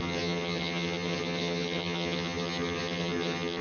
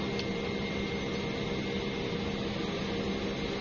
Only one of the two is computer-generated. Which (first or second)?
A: first